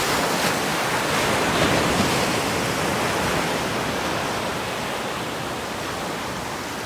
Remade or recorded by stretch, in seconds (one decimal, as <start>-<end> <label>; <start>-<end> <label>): 0.0-6.9 recorded